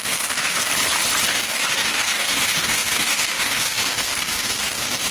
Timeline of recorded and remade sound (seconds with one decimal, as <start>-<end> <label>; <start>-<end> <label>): 0.0-0.7 remade; 0.7-1.3 recorded; 1.3-5.1 remade